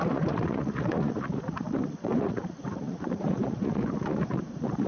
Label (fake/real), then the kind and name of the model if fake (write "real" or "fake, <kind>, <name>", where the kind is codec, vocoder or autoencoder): fake, vocoder, Vocos